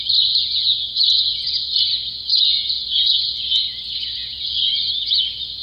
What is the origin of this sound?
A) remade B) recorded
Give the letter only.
A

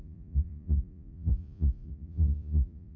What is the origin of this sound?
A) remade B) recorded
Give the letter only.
A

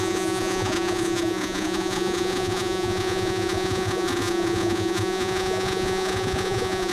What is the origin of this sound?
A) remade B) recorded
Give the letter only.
A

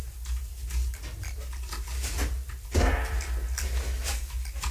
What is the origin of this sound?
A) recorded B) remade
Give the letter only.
A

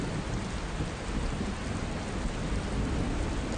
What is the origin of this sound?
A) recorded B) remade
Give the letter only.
A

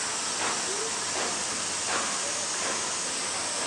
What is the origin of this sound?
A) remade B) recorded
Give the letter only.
B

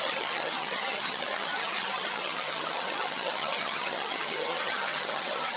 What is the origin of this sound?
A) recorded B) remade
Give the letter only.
B